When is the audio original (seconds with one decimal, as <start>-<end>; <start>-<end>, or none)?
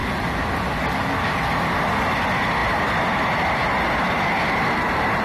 0.0-5.2